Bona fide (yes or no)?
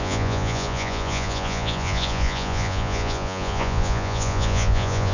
no